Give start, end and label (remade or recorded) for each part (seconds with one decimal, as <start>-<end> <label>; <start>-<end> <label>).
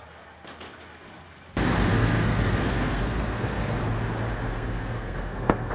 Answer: 0.0-1.9 recorded; 1.9-3.8 remade; 3.8-4.5 recorded; 4.5-5.7 remade